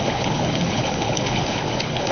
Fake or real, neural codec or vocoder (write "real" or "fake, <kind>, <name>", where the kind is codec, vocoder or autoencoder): fake, codec, HILCodec